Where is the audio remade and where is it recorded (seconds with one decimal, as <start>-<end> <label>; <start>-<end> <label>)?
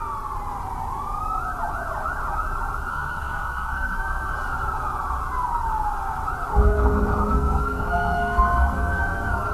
0.0-2.9 recorded; 2.9-4.3 remade; 4.3-6.5 recorded; 6.5-9.5 remade